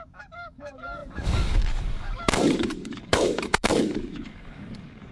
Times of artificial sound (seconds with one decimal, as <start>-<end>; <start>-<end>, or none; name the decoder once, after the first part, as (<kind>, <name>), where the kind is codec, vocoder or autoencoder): 0.0-5.1 (codec, DAC)